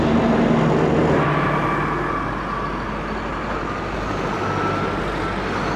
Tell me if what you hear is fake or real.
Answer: real